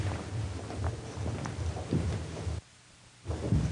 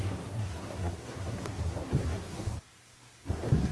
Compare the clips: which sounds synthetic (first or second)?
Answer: second